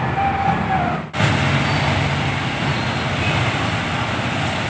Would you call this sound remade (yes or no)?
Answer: no